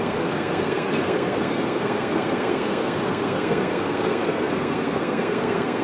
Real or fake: fake